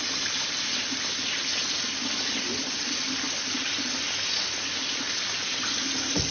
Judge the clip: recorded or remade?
recorded